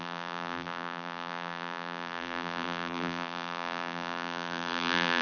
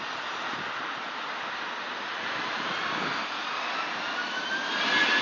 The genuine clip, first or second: second